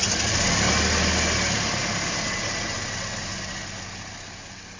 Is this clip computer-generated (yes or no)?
no